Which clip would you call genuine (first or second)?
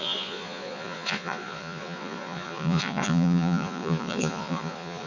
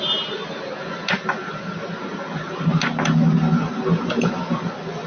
second